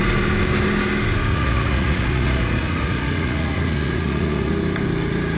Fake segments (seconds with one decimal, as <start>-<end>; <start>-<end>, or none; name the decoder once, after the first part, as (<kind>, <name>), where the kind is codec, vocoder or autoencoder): 1.3-4.5 (vocoder, Vocos)